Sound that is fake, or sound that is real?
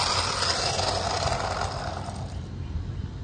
real